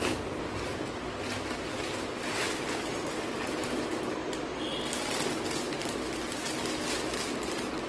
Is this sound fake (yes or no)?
no